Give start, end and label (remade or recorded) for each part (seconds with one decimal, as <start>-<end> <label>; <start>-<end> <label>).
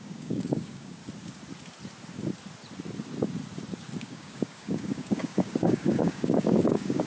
0.0-1.0 remade; 1.0-4.0 recorded; 4.0-7.1 remade